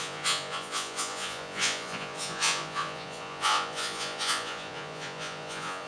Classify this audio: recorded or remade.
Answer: remade